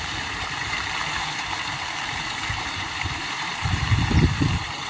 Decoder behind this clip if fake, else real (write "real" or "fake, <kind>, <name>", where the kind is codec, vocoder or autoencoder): fake, vocoder, BigVGAN v2